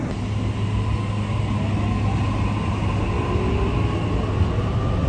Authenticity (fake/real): real